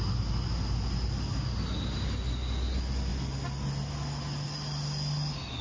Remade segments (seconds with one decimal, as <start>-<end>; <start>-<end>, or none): none